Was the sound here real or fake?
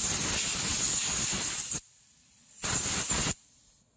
real